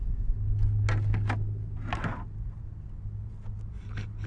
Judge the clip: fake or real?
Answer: real